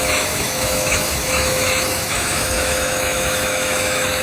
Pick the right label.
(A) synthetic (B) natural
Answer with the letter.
A